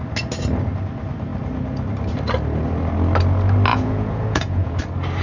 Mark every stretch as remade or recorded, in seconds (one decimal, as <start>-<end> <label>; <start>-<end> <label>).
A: 0.0-3.7 recorded; 3.7-4.8 remade; 4.8-5.2 recorded